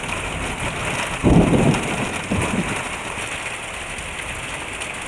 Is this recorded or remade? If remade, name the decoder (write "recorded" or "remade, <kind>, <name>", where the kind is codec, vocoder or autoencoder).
recorded